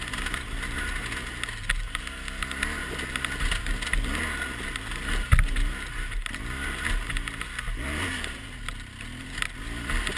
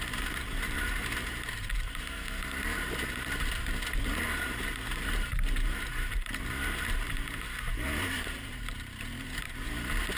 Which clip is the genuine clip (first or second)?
first